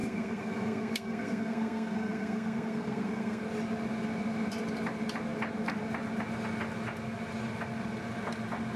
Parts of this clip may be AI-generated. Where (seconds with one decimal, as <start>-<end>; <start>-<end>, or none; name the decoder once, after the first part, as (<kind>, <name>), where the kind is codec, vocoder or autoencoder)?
0.0-3.4 (codec, SNAC)